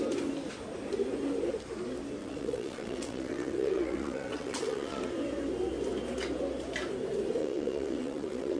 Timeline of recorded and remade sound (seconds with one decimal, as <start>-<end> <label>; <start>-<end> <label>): 0.0-2.2 recorded; 2.2-5.0 remade; 5.0-7.4 recorded; 7.4-8.6 remade